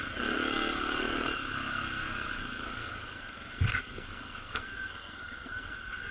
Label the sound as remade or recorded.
remade